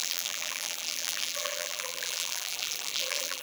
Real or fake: fake